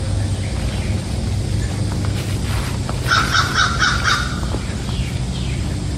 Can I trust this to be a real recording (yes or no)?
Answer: yes